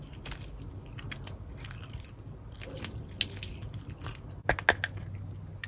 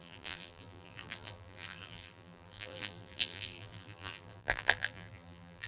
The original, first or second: first